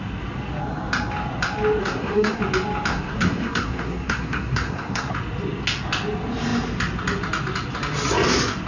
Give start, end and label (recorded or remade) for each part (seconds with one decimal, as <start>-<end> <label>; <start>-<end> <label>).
0.0-1.8 recorded; 1.8-2.4 remade; 2.4-2.9 recorded; 2.9-5.1 remade; 5.1-8.7 recorded